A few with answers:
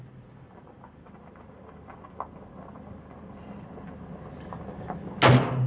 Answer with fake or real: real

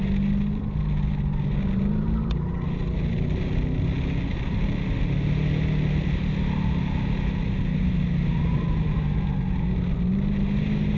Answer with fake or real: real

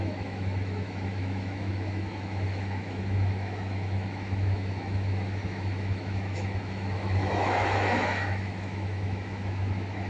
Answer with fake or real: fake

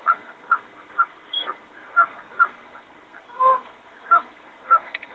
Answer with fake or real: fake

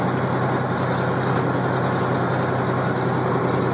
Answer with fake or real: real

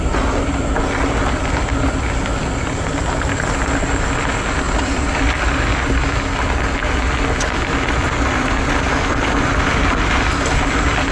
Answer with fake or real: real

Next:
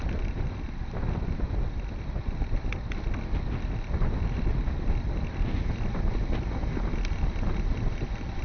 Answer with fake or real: real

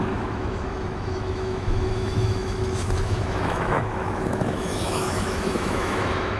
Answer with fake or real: fake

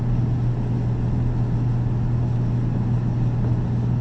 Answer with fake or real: real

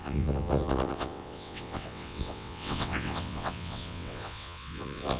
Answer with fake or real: fake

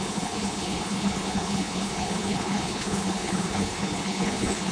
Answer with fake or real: fake